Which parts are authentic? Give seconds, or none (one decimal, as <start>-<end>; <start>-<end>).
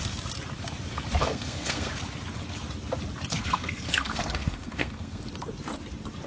0.0-1.2; 1.9-3.3; 5.2-6.3